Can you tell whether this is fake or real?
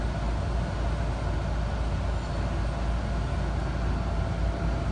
real